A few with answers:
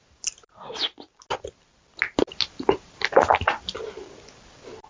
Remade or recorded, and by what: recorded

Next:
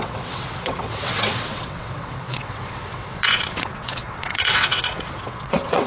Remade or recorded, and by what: remade, vocoder, WaveNeXt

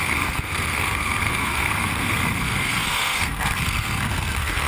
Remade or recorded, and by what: remade, codec, SNAC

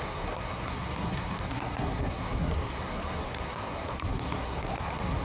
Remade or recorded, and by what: remade, codec, SNAC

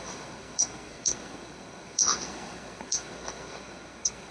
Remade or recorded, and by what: remade, codec, SNAC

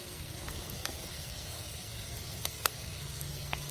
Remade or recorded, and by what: remade, codec, SNAC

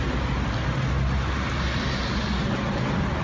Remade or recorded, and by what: recorded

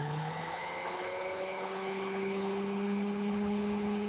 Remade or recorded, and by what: remade, codec, HILCodec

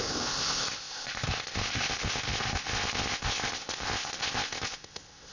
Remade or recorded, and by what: remade, codec, ZipCodec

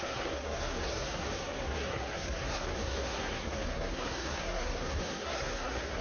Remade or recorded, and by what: remade, codec, SNAC